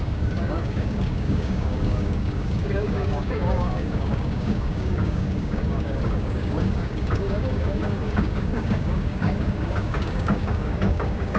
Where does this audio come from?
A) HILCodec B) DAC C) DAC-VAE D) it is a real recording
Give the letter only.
B